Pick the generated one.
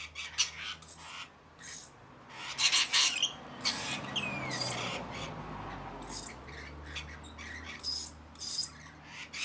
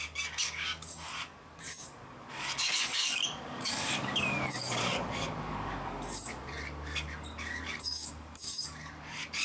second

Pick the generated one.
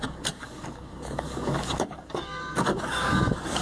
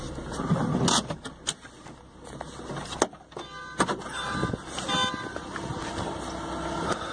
first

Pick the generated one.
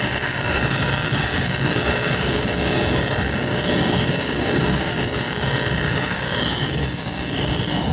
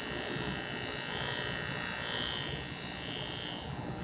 first